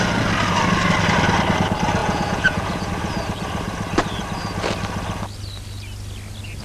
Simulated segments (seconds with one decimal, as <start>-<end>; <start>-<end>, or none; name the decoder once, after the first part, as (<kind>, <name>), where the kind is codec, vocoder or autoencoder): 2.0-2.9 (vocoder, Vocos)